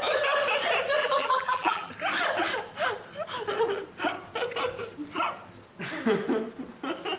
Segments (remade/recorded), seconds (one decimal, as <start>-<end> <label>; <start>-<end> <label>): 0.0-1.0 recorded; 1.0-1.9 remade; 1.9-7.2 recorded